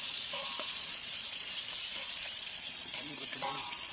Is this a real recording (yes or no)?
no